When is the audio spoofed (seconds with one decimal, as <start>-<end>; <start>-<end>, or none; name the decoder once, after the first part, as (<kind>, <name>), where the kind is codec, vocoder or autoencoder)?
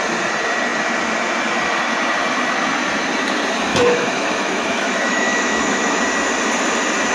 3.7-6.0 (autoencoder, DAC-VAE)